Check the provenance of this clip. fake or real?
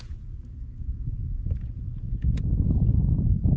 fake